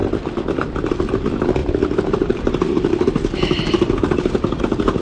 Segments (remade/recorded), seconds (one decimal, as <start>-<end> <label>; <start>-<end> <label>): 0.0-1.2 remade; 1.2-1.6 recorded; 1.6-4.6 remade; 4.6-5.0 recorded